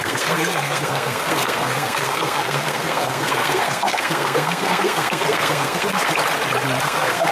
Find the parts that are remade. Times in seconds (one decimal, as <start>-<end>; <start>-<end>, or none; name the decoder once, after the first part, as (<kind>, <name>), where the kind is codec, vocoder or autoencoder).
0.0-6.1 (codec, SNAC); 6.8-7.3